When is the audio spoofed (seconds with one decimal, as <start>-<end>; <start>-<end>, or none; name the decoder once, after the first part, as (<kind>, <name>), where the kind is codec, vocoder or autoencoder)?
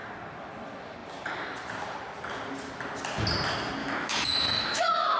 3.8-5.2 (autoencoder, DAC-VAE)